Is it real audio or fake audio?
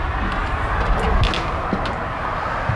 real